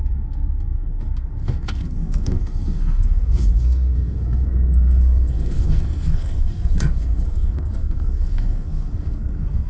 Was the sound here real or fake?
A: fake